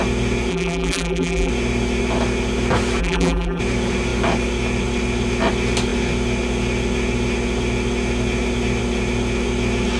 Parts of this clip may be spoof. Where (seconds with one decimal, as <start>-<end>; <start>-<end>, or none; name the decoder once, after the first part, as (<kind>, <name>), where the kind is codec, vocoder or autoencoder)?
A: 0.5-1.5 (vocoder, BigVGAN v2); 3.0-3.6